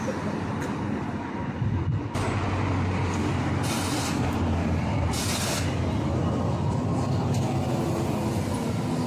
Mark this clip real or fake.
real